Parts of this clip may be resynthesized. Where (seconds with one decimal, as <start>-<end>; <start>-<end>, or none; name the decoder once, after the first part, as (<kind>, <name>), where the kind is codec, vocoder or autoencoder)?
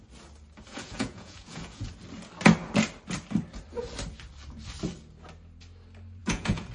0.7-1.9 (vocoder, Vocos); 6.2-6.7